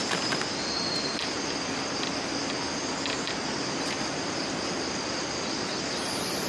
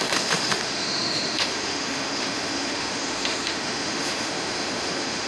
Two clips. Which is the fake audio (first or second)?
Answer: second